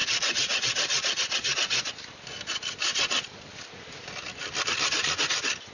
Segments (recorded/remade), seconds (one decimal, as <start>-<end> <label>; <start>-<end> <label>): 0.0-1.9 remade; 1.9-5.7 recorded

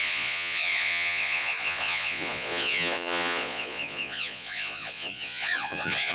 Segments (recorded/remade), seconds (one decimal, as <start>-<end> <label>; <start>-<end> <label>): 0.0-6.1 remade